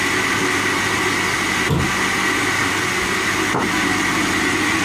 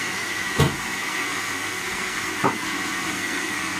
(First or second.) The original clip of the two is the first